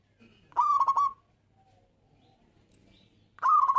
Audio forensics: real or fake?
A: real